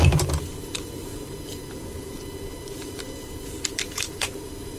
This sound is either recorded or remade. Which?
remade